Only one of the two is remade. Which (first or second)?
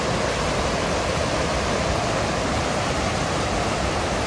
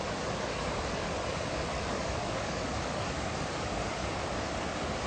second